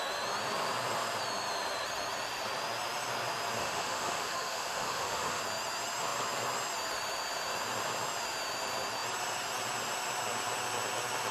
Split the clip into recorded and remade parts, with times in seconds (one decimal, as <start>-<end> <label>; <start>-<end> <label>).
0.0-3.6 recorded; 3.6-5.4 remade; 5.4-11.3 recorded